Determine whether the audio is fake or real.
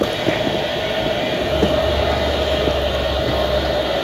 real